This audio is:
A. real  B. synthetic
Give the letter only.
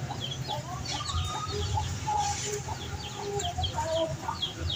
B